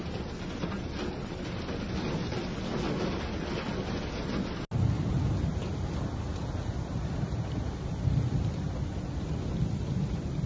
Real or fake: real